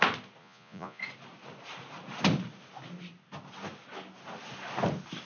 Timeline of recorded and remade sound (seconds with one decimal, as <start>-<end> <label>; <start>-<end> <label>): 0.0-0.4 recorded; 0.4-1.0 remade; 1.0-5.3 recorded